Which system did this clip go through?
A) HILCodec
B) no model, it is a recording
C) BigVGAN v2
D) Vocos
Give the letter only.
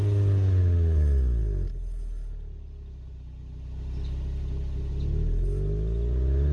B